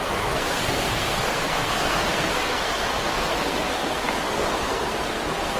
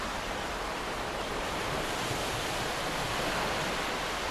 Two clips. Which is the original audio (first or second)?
second